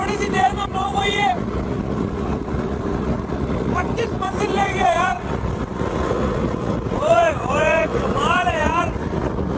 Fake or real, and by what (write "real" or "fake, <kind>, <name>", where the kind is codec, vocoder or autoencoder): fake, vocoder, Vocos